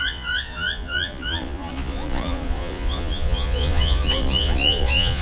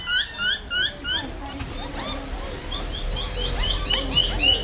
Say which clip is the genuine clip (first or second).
second